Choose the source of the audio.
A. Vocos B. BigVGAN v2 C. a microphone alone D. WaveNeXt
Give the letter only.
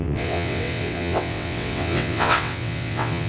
D